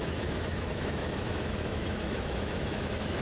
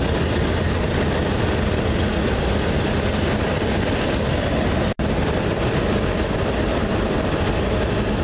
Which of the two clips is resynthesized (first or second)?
first